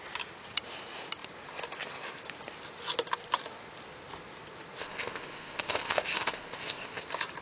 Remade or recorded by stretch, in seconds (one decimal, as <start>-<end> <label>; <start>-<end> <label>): 0.0-4.8 recorded; 4.8-7.0 remade; 7.0-7.4 recorded